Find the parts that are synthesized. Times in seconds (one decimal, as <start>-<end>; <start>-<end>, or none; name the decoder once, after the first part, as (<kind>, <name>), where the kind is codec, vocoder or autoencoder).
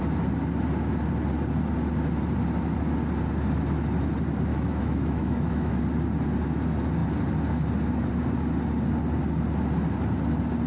4.5-5.8 (autoencoder, DAC-VAE)